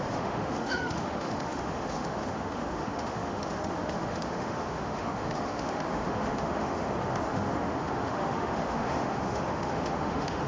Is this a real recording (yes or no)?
no